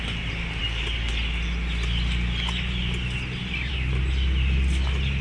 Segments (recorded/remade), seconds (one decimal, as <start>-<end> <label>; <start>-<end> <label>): 0.0-5.2 recorded